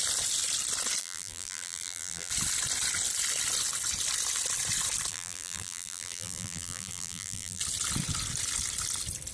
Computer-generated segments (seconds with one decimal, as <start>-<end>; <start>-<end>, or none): 1.0-2.3; 5.1-7.6